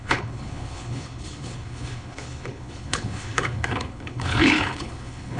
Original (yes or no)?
no